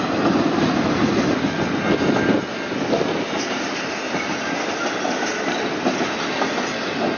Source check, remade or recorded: recorded